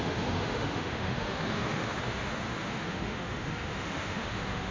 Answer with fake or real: fake